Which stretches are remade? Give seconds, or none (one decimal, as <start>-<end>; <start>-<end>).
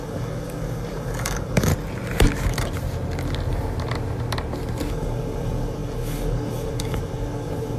0.0-1.7; 4.9-7.8